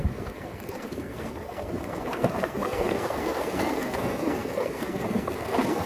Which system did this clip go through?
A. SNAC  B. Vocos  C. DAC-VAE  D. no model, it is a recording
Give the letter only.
A